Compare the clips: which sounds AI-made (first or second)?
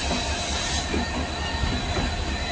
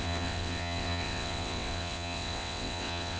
second